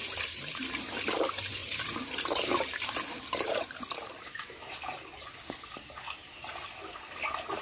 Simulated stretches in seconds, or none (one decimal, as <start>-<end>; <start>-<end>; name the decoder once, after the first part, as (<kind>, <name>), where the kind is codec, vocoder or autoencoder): 0.0-0.9 (vocoder, BigVGAN v2); 1.6-3.8